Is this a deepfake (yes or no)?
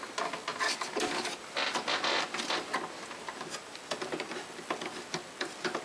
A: no